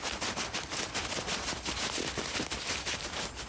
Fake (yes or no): no